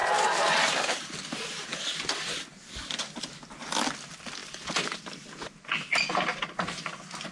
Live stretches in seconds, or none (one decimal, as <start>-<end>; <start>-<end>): 0.0-4.4; 5.4-7.3